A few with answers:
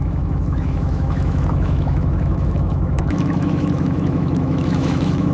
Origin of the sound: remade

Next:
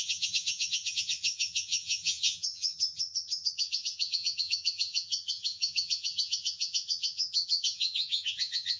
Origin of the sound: remade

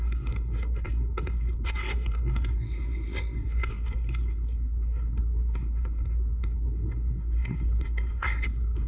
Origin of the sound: remade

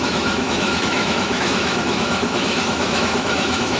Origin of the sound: remade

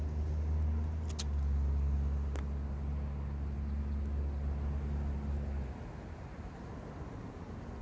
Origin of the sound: recorded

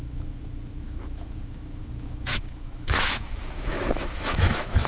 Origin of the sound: remade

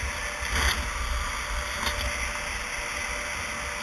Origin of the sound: recorded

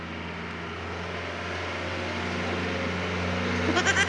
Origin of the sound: recorded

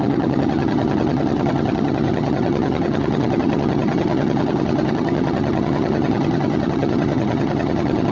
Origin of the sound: remade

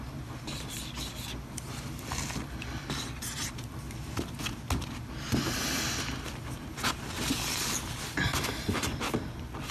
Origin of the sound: recorded